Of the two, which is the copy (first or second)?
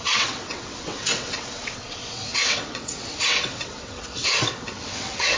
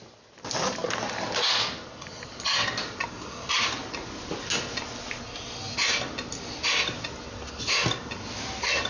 first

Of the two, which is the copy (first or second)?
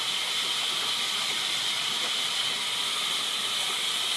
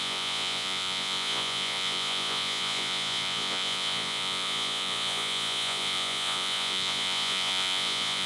second